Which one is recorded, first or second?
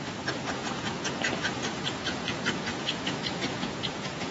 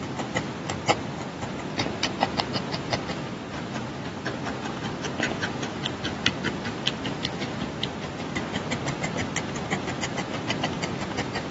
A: second